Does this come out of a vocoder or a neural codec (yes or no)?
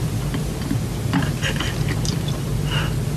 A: no